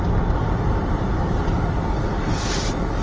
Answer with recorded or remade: recorded